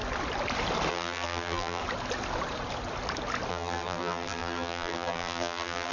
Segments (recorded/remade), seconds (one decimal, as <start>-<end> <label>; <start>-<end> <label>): 0.0-0.9 recorded; 0.9-1.8 remade; 1.8-3.5 recorded; 3.5-5.9 remade